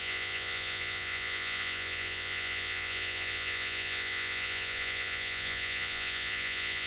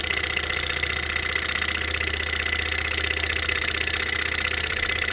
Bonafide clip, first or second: second